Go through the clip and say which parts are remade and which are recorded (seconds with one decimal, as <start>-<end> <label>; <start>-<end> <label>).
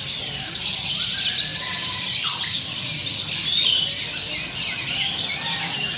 0.0-1.5 recorded; 1.5-3.3 remade; 3.3-6.0 recorded